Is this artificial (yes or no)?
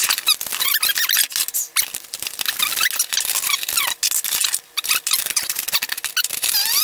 no